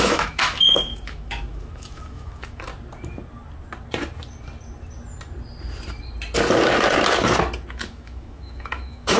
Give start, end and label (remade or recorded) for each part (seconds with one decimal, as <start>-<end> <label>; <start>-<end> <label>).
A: 0.0-2.7 remade; 2.7-7.7 recorded; 7.7-9.2 remade